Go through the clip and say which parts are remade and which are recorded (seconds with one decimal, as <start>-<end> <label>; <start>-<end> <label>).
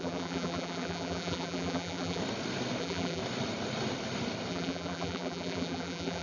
0.0-2.2 remade; 2.2-2.8 recorded; 2.8-3.2 remade; 3.2-4.5 recorded; 4.5-6.2 remade